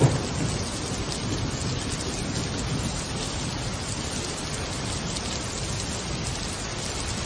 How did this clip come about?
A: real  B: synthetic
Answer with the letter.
A